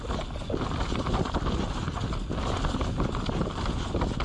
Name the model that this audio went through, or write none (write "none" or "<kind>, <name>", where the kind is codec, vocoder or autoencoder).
none